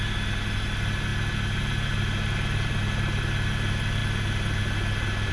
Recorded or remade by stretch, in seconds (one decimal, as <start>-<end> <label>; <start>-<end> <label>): 0.0-5.3 recorded